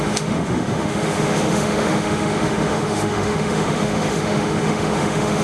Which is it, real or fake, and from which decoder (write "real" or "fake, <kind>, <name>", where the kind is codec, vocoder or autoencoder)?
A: fake, autoencoder, DAC-VAE